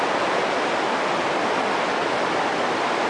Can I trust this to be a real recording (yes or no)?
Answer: yes